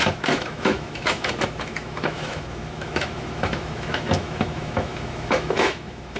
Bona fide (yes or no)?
no